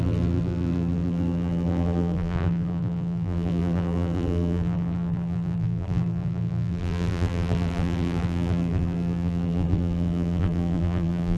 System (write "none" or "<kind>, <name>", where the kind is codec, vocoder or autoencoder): vocoder, BigVGAN v2